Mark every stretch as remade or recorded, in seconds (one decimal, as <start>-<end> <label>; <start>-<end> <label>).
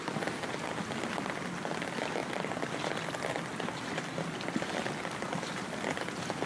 0.0-6.5 recorded